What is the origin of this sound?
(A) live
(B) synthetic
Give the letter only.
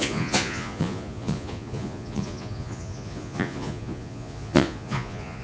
B